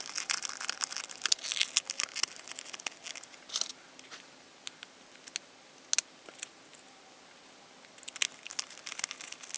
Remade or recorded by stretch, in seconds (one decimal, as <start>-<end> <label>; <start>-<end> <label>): 0.0-9.6 recorded